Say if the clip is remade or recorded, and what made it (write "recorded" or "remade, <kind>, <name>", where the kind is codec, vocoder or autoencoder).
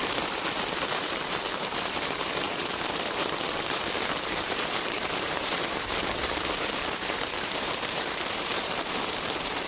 remade, vocoder, BigVGAN v2